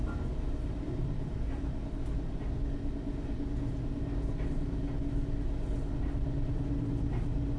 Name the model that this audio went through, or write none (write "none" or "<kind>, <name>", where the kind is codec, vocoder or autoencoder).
none